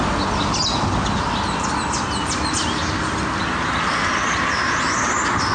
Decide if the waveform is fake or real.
real